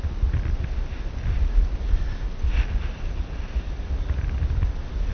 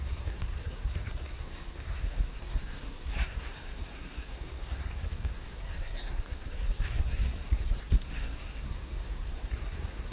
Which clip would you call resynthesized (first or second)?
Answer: second